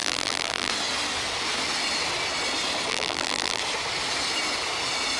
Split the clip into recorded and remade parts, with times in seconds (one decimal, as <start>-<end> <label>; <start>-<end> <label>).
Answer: 0.0-0.7 remade; 0.7-2.9 recorded; 2.9-3.6 remade; 3.6-5.2 recorded